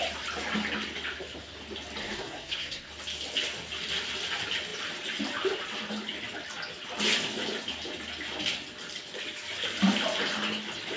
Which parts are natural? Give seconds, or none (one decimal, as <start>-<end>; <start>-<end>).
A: 0.0-2.0; 2.9-11.0